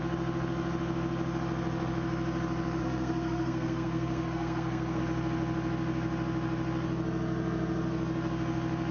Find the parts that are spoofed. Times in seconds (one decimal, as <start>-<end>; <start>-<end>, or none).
2.8-5.0

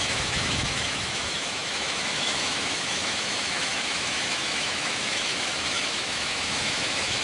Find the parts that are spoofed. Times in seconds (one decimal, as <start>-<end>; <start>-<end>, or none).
0.0-7.2

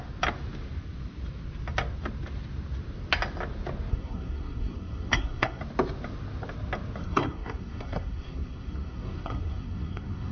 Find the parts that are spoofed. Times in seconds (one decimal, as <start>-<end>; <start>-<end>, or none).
3.9-5.6; 7.0-10.3

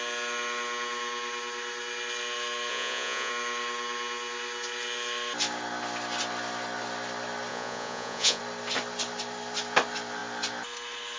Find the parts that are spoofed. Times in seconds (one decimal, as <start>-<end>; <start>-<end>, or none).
2.7-3.3; 7.5-8.4

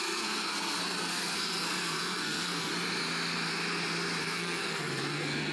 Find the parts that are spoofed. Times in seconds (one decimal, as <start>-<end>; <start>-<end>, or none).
0.0-2.7; 4.2-5.5

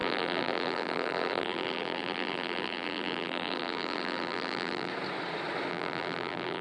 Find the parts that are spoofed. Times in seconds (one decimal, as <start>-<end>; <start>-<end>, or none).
0.0-4.9; 5.7-6.6